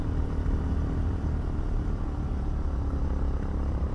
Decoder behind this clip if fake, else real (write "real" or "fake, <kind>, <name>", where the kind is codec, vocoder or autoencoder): fake, vocoder, BigVGAN v2